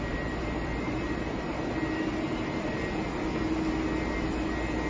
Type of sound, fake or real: real